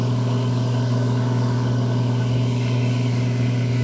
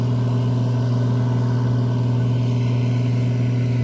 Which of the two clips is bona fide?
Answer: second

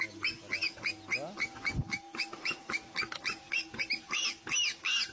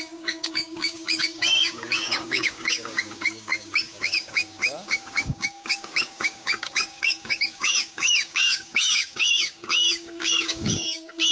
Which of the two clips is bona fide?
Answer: first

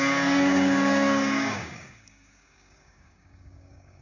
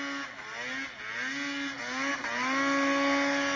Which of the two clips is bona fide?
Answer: second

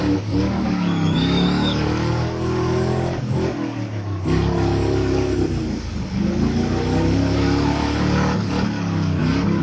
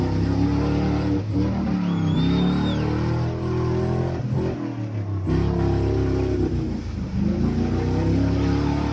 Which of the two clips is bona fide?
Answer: second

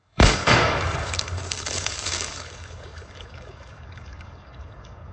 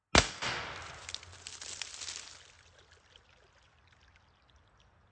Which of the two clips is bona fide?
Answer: second